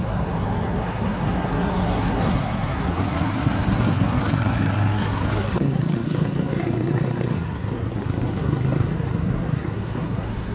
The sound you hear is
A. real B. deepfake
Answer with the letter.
B